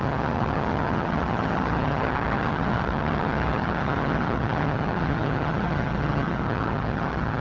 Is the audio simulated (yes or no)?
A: yes